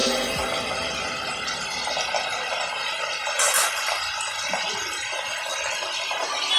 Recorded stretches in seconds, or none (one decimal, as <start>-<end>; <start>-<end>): 0.0-6.6